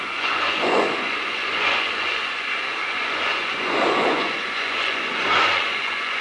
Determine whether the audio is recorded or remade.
remade